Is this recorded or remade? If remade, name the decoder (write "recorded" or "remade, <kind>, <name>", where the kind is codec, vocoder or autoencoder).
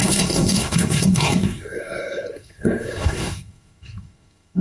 remade, codec, SNAC